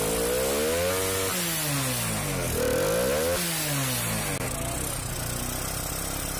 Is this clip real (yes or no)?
yes